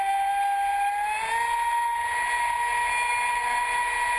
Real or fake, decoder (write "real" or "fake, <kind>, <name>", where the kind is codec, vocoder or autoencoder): real